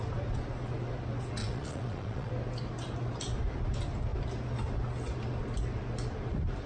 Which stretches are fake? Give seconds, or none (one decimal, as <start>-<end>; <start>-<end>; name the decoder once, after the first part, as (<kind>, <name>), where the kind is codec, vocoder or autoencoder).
1.4-2.3 (vocoder, Vocos)